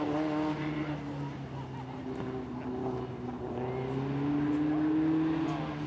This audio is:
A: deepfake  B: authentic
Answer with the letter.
B